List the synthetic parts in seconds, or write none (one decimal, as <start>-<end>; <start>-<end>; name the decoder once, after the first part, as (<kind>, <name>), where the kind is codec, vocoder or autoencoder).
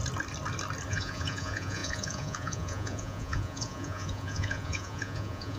0.9-5.6 (vocoder, Vocos)